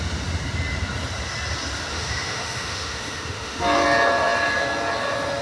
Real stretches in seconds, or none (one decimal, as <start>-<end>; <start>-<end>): 0.0-1.9; 3.6-5.4